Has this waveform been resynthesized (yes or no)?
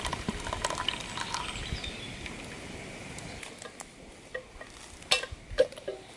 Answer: no